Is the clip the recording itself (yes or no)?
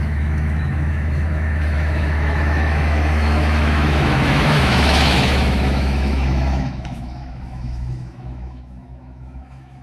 no